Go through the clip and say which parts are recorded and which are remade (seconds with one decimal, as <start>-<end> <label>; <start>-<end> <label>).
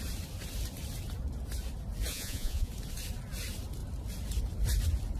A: 0.0-2.1 recorded; 2.1-2.7 remade; 2.7-5.2 recorded